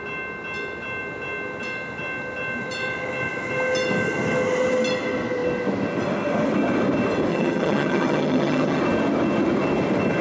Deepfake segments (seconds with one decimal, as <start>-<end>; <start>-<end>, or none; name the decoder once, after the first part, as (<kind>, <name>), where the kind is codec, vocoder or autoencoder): 7.3-8.8 (vocoder, HiFi-GAN)